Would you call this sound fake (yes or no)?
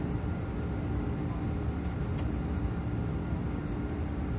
no